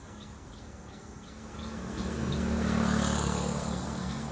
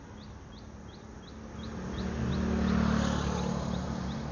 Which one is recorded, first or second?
second